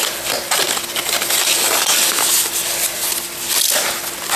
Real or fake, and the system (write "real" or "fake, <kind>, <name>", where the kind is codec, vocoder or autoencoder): real